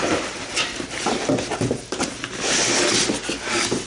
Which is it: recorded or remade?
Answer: recorded